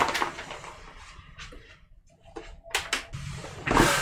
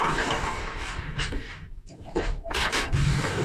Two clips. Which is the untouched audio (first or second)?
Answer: first